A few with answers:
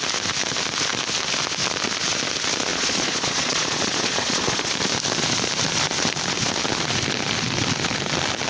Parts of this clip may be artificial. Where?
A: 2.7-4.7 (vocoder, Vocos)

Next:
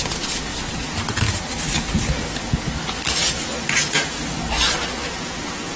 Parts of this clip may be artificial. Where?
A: 0.0-0.5 (vocoder, Vocos); 3.8-4.2; 5.1-5.8

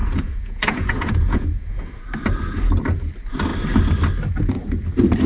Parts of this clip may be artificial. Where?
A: 0.0-1.8 (vocoder, Vocos)

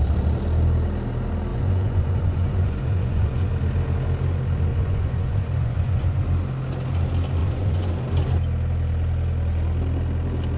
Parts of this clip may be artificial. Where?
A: 1.5-3.5 (vocoder, Vocos); 4.7-6.2; 7.4-7.9

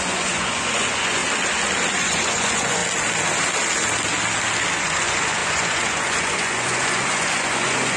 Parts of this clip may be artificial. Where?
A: 0.0-1.2 (vocoder, Vocos); 1.9-2.8; 4.8-8.0

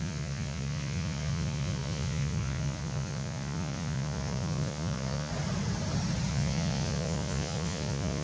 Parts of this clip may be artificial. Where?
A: 0.0-5.3 (vocoder, Vocos); 6.3-8.2

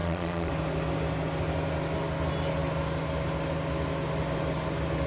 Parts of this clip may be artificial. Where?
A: 0.0-0.5 (vocoder, Vocos)

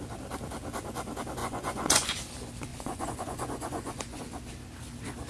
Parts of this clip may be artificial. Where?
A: 1.4-2.2 (vocoder, Vocos); 2.7-4.2